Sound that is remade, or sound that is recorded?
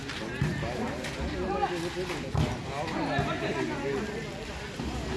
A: recorded